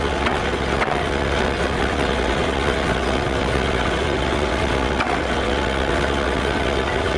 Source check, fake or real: fake